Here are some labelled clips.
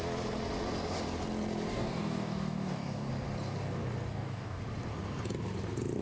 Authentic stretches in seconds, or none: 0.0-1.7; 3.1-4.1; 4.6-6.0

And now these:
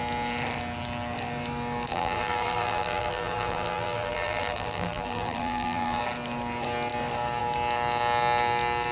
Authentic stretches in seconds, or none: 0.0-1.9; 6.0-8.9

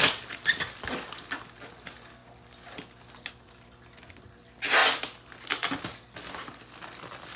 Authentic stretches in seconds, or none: 0.0-7.4

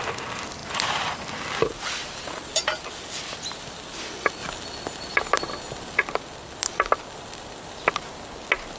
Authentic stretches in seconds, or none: 0.0-8.8

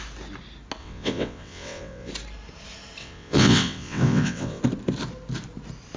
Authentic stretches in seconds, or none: 0.0-0.8; 2.1-3.0; 4.6-6.0

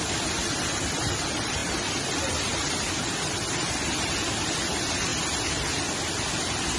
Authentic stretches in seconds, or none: 5.1-6.1